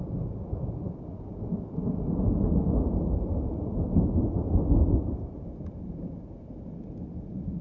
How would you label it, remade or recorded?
recorded